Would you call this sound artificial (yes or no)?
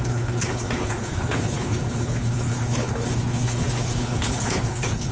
yes